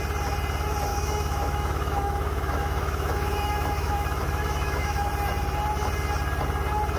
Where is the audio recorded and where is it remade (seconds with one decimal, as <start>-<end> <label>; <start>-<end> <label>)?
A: 0.0-0.9 recorded; 0.9-5.1 remade; 5.1-7.0 recorded